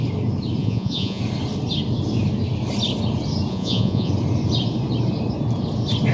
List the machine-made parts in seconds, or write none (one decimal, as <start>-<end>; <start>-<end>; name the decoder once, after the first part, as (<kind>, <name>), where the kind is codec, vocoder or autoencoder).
0.6-1.2 (vocoder, Vocos); 3.5-4.1